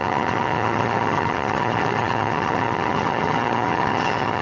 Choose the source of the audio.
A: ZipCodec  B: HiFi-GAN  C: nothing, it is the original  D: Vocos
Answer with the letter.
B